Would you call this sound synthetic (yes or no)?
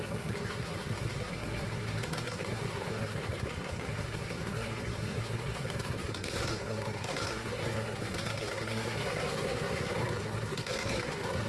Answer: yes